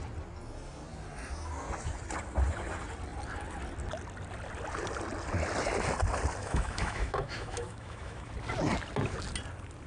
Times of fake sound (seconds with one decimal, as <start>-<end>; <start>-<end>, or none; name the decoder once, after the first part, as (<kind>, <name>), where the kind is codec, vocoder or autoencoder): 6.4-8.3 (autoencoder, DAC-VAE)